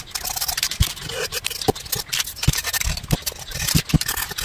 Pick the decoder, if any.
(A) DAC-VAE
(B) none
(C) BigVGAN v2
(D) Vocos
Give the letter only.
B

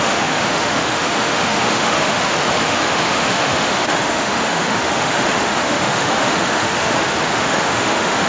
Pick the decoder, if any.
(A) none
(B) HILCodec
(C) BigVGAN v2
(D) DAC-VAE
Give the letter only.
D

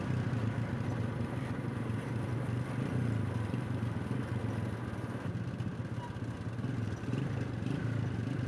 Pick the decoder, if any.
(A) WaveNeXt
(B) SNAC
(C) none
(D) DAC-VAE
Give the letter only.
C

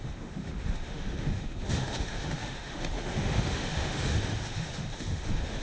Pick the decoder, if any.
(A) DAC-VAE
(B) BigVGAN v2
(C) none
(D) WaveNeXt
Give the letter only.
A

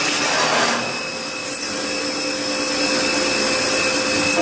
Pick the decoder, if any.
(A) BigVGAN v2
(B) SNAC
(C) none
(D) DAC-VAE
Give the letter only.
C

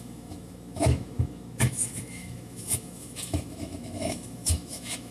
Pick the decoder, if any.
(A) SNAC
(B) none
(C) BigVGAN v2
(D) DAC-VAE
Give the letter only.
D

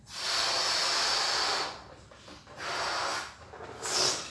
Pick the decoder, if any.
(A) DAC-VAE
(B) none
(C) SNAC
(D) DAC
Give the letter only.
B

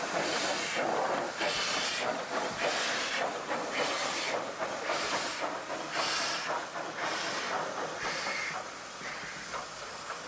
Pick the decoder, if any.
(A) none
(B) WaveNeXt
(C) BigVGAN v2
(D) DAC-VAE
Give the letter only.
A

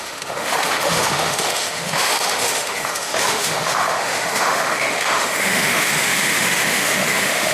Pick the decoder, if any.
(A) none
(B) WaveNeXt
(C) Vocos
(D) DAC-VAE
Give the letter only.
D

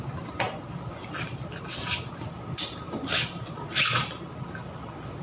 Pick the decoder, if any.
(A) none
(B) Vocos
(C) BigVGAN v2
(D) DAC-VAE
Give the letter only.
A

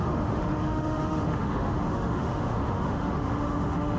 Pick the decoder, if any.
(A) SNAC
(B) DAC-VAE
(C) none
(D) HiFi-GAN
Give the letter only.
B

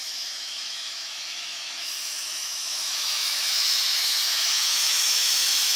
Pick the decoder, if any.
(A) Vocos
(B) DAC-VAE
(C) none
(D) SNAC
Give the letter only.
B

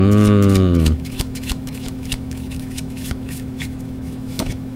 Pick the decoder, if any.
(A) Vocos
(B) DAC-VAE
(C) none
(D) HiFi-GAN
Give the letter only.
B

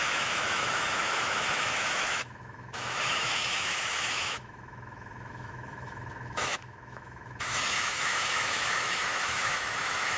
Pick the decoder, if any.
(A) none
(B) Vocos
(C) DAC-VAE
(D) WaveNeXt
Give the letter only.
C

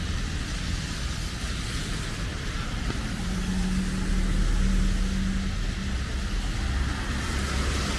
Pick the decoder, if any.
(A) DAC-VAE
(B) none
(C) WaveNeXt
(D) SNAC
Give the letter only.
B